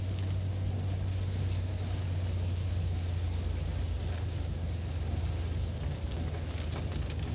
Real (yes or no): yes